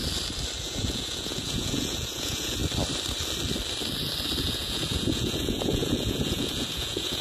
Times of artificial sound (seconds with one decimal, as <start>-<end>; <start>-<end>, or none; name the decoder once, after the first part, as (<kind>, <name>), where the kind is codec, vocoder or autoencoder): 0.6-2.6 (vocoder, Vocos); 4.4-7.2